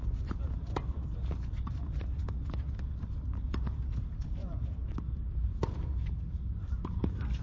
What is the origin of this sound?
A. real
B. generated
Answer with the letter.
B